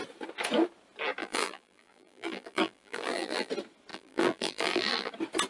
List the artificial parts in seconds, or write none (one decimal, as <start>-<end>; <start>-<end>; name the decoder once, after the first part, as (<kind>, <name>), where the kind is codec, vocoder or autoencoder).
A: 1.2-3.5 (vocoder, BigVGAN v2); 3.9-5.1